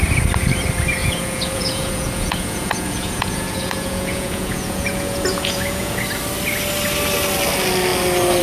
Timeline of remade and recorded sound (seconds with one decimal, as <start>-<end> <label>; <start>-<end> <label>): 0.0-1.0 recorded; 1.0-6.0 remade; 6.0-8.4 recorded